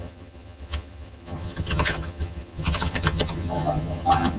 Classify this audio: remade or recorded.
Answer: remade